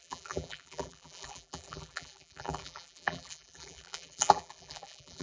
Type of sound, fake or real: fake